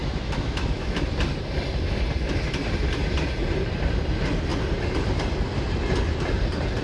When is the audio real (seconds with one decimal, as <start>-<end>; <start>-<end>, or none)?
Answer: 1.1-6.8